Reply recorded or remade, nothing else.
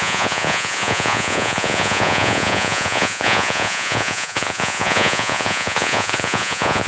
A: remade